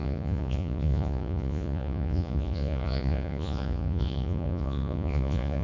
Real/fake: fake